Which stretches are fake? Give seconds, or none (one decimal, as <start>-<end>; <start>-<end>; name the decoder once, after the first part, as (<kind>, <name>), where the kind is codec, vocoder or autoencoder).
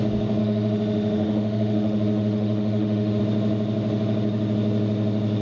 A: 0.4-3.2 (autoencoder, DAC-VAE)